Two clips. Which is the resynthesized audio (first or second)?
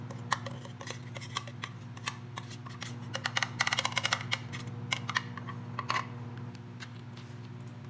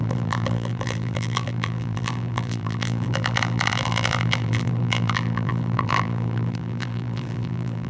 second